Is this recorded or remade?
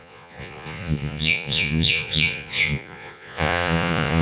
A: remade